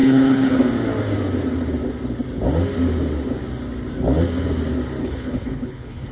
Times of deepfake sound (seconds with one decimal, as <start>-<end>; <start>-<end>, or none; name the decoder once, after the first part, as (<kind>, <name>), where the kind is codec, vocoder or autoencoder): 0.0-0.6 (codec, HILCodec); 5.0-6.1